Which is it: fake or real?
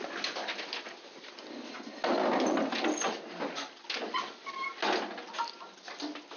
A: real